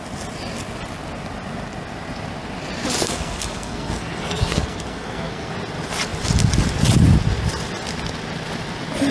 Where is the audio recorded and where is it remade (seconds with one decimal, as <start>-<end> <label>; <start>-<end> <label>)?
0.0-3.0 recorded; 3.0-5.5 remade; 5.5-9.1 recorded